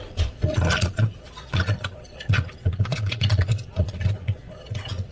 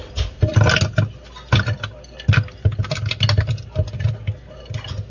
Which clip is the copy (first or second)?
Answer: first